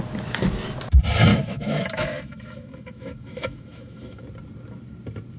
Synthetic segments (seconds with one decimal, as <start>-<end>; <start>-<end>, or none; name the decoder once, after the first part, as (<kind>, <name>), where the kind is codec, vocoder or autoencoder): 1.3-4.2 (autoencoder, DAC-VAE)

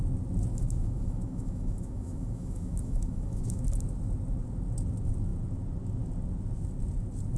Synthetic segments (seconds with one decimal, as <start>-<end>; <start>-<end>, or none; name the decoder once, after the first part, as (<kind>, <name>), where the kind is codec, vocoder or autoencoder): 0.5-3.6 (autoencoder, DAC-VAE)

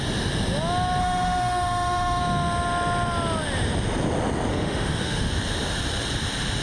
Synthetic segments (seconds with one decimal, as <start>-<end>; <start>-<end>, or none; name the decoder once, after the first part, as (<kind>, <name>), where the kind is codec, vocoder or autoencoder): 1.0-2.2 (autoencoder, DAC-VAE); 4.5-5.3

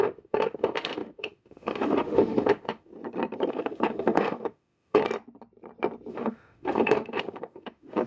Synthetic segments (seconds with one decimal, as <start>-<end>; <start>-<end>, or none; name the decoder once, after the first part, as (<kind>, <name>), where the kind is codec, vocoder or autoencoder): 0.0-2.9 (autoencoder, DAC-VAE); 3.5-5.0; 6.1-8.1